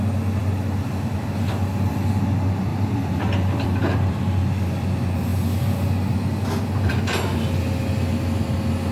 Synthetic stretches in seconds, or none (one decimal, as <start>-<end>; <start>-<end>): 2.7-4.2